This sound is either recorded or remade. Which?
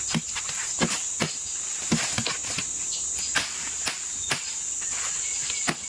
recorded